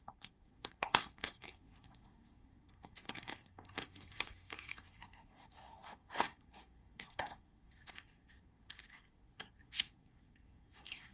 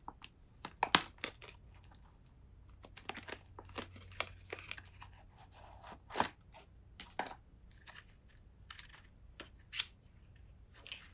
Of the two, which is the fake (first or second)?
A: first